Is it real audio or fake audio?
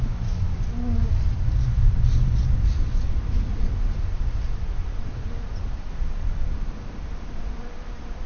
real